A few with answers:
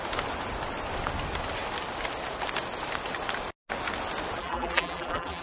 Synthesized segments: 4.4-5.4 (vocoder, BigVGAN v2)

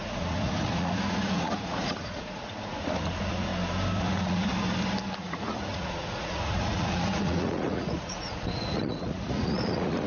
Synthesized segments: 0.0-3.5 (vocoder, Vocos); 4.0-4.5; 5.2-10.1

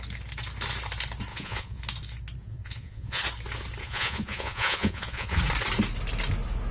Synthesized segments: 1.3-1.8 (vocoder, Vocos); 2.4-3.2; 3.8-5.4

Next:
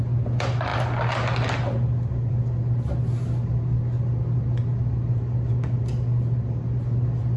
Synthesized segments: none